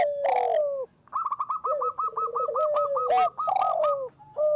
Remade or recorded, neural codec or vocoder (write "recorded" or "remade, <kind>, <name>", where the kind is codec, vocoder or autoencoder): recorded